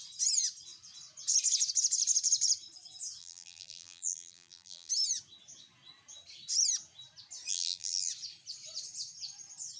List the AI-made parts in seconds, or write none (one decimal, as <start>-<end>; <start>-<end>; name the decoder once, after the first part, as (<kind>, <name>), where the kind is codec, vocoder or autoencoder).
3.2-4.9 (vocoder, BigVGAN v2); 7.5-8.1